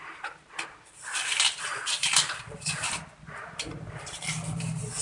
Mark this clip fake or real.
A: fake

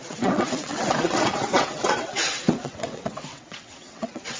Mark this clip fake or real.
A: fake